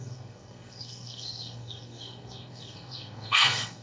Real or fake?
fake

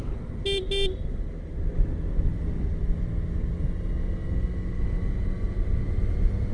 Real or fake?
real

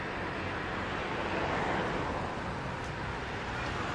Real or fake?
real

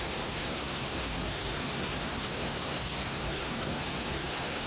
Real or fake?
fake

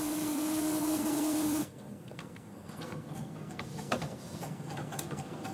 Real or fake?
fake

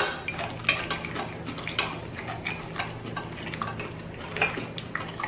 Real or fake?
real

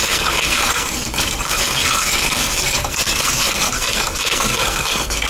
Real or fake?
fake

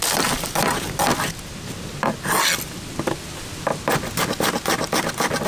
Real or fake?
real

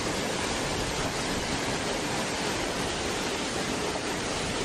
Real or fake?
real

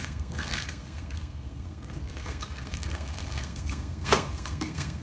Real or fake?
fake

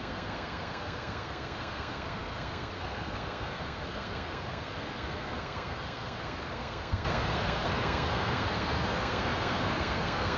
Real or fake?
fake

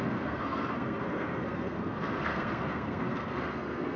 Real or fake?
fake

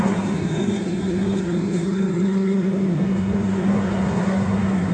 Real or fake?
fake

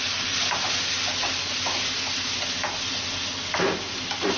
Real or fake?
real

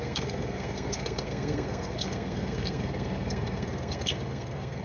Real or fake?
fake